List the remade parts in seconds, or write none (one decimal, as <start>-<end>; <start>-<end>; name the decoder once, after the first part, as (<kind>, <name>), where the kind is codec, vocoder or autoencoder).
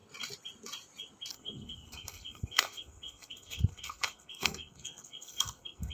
1.3-5.9 (codec, SNAC)